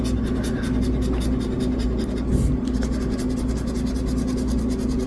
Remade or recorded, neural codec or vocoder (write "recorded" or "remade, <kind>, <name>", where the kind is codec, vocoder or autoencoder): recorded